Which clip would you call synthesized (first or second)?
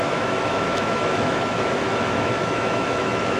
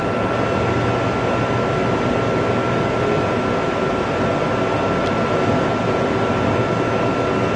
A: first